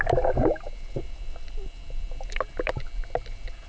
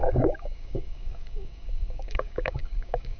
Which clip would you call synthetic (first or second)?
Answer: second